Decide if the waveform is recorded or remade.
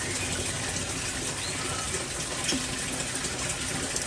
recorded